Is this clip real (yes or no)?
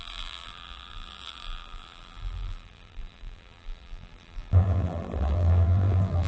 no